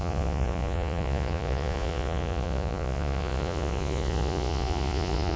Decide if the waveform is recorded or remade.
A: remade